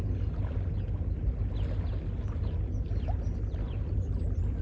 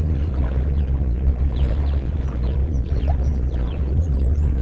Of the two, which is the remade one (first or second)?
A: second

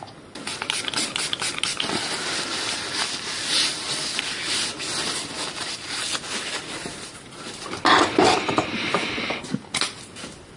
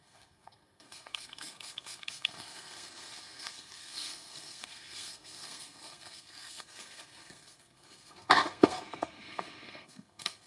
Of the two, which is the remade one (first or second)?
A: second